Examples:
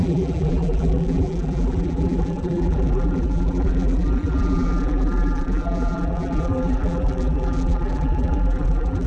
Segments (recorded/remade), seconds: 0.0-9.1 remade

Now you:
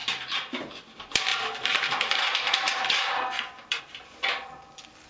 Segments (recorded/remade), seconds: 0.0-0.5 remade; 0.5-1.3 recorded; 1.3-3.8 remade; 3.8-5.1 recorded

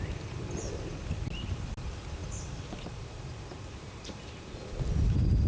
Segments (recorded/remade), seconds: 0.0-2.2 recorded; 2.2-4.4 remade; 4.4-5.5 recorded

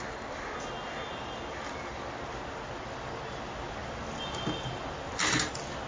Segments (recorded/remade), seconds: 0.0-5.9 recorded

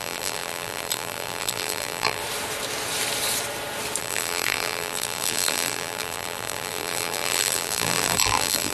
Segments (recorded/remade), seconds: 0.0-2.2 remade; 2.2-4.0 recorded; 4.0-8.7 remade

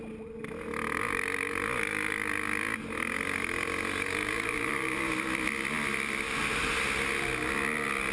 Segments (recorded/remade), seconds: 0.0-4.2 recorded; 4.2-5.1 remade; 5.1-8.1 recorded

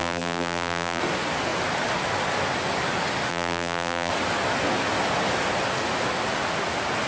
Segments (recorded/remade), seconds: 0.0-1.0 remade; 1.0-3.3 recorded; 3.3-4.1 remade; 4.1-7.1 recorded

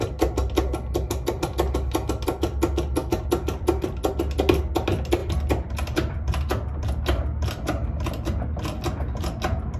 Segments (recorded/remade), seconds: 0.0-3.0 recorded; 3.0-4.1 remade; 4.1-5.2 recorded; 5.2-6.5 remade; 6.5-9.8 recorded